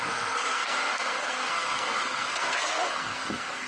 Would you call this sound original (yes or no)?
no